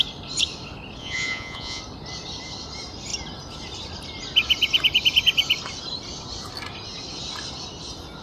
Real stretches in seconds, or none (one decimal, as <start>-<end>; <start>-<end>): 0.0-1.0; 1.8-8.2